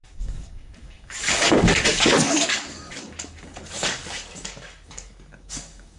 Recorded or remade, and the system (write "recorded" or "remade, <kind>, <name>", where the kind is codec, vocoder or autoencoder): remade, codec, DAC